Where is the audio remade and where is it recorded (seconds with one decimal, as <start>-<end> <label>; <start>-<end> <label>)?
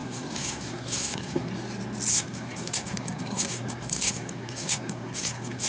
0.0-1.5 remade; 1.5-2.1 recorded; 2.1-5.7 remade